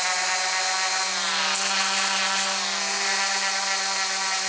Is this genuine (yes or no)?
yes